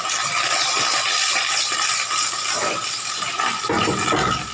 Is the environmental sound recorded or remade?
recorded